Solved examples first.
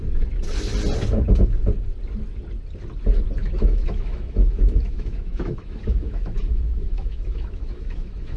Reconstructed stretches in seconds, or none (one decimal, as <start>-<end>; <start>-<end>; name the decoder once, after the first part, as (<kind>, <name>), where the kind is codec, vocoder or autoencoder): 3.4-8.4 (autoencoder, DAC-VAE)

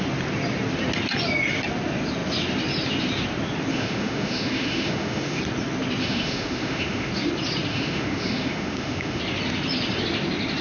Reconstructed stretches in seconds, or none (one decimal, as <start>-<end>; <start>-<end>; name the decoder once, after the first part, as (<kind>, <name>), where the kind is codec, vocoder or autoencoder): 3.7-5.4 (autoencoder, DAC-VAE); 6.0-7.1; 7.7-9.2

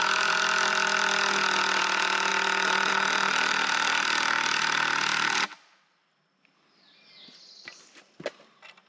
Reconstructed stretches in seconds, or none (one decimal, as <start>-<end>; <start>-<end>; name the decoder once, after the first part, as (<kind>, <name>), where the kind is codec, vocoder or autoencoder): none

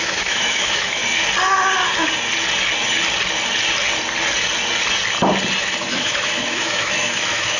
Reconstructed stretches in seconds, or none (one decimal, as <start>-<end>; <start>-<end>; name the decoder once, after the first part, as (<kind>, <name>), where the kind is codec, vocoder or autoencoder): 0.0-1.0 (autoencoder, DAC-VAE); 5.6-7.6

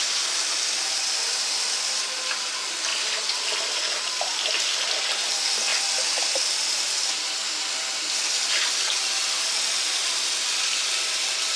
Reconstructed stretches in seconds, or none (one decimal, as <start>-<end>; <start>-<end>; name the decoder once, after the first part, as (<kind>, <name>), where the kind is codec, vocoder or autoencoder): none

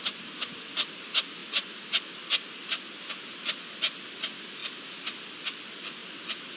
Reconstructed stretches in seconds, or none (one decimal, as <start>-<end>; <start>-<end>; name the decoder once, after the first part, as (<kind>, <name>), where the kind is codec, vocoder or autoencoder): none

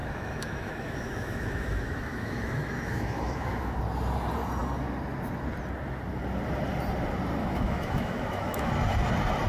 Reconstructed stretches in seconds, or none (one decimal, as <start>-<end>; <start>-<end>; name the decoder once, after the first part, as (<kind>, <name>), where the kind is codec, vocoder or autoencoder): 0.0-3.8 (autoencoder, DAC-VAE); 7.4-8.7